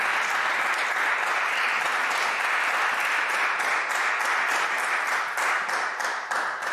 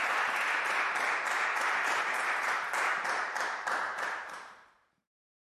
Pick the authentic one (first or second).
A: first